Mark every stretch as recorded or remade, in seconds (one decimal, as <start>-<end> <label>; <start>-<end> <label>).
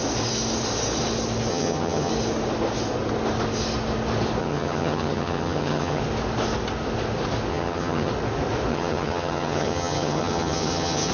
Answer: 0.0-1.5 recorded; 1.5-2.1 remade; 2.1-4.4 recorded; 4.4-6.0 remade; 6.0-7.5 recorded; 7.5-8.1 remade; 8.1-8.7 recorded; 8.7-11.1 remade